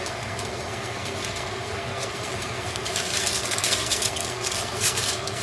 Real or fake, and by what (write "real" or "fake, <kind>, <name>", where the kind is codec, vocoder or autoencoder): fake, codec, SNAC